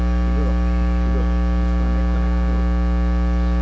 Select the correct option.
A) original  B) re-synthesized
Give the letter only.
A